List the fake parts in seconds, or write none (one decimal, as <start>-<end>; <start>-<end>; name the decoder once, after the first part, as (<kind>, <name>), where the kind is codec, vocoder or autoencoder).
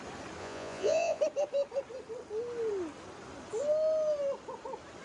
0.4-1.2 (vocoder, Vocos)